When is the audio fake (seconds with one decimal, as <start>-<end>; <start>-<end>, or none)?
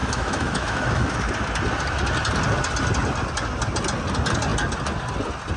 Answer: 0.0-1.3